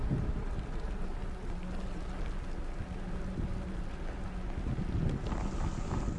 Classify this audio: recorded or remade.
recorded